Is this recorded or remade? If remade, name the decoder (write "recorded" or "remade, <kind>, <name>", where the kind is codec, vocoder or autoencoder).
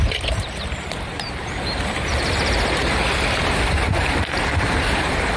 remade, vocoder, BigVGAN v2